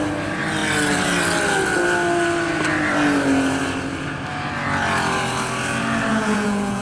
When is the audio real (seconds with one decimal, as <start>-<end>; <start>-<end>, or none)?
0.0-6.1